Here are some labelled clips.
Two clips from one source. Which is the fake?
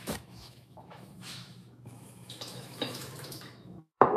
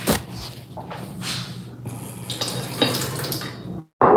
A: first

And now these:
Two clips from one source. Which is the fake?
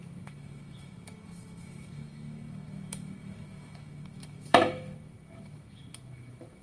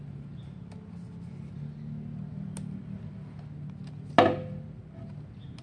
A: first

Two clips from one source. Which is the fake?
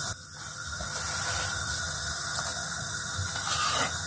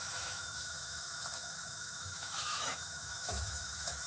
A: second